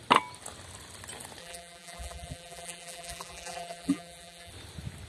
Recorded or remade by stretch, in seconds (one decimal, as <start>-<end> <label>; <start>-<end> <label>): 0.0-1.4 recorded; 1.4-4.5 remade; 4.5-5.1 recorded